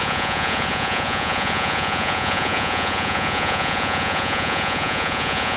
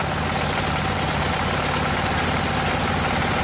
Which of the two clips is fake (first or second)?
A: first